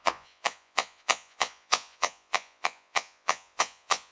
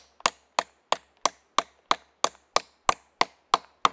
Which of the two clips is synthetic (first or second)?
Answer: first